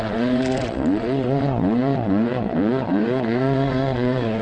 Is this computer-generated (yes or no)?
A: yes